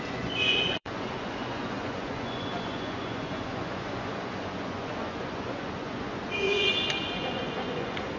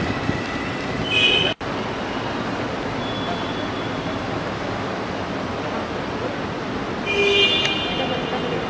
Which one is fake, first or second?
first